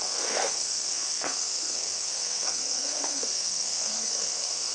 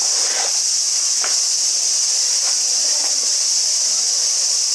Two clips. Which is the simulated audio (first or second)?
first